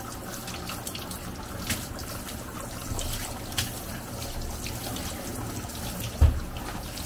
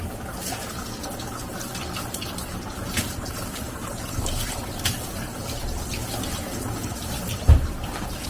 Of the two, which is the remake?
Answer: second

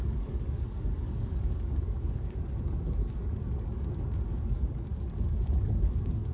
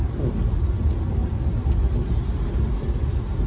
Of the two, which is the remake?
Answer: first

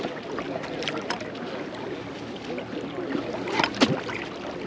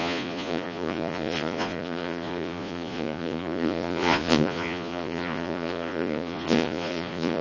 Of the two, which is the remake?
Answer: second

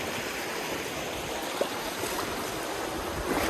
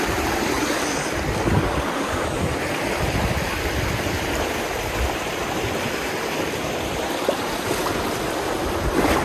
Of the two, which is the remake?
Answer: second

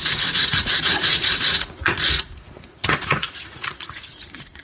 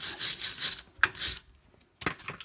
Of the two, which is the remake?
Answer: first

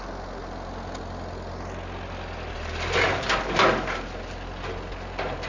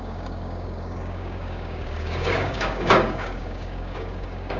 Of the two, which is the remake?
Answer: second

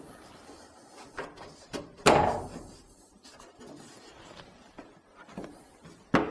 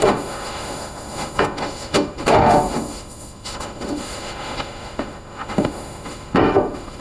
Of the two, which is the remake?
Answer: second